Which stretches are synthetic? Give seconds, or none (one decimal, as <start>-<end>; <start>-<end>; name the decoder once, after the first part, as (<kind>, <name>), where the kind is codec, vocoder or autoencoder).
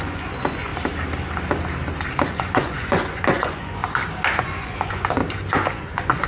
0.0-0.7 (vocoder, Vocos); 2.3-3.8; 4.4-5.2; 5.7-6.3